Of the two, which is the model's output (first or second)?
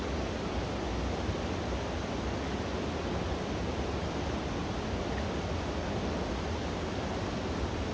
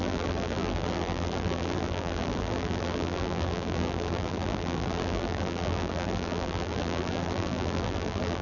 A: second